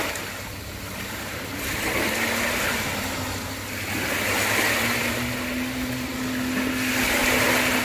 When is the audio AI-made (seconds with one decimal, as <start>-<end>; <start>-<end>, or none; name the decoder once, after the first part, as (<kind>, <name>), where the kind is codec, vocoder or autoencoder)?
none